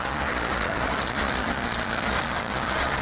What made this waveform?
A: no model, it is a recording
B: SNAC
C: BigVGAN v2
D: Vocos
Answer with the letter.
D